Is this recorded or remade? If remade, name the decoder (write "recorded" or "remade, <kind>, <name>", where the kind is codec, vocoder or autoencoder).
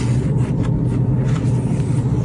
recorded